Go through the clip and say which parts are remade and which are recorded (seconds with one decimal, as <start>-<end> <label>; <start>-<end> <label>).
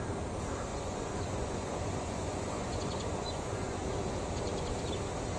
0.0-0.7 recorded; 0.7-3.9 remade; 3.9-5.4 recorded